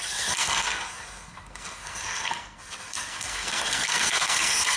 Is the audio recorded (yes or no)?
no